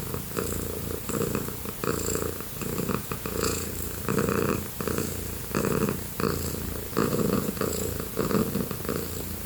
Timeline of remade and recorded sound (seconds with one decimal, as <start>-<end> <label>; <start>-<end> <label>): 0.0-1.8 recorded; 1.8-3.7 remade; 3.7-7.0 recorded; 7.0-8.4 remade; 8.4-9.5 recorded